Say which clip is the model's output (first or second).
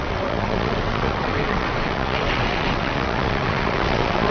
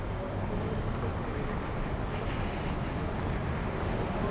first